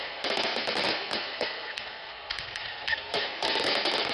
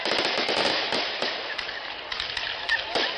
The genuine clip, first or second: second